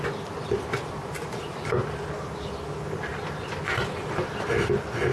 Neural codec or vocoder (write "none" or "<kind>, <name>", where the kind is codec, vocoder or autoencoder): none